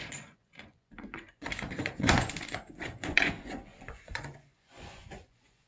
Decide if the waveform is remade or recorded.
remade